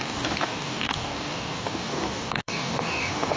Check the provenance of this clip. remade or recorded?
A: remade